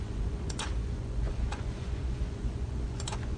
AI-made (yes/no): yes